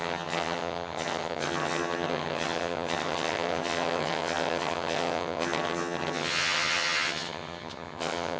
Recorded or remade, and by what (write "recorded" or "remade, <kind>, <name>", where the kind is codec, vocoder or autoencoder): remade, vocoder, HiFi-GAN